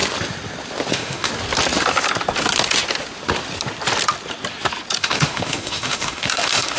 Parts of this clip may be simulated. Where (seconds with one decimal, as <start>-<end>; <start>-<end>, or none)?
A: 0.9-1.3; 5.0-6.8